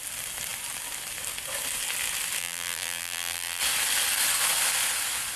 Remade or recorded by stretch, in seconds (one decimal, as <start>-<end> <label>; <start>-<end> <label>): 0.0-2.4 recorded; 2.4-3.6 remade; 3.6-5.4 recorded